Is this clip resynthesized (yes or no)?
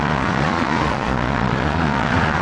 yes